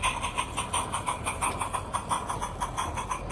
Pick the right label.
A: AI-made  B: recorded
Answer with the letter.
B